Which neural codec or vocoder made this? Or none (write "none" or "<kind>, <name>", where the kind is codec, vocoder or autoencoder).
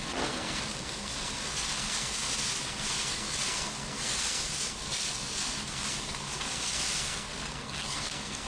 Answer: codec, SNAC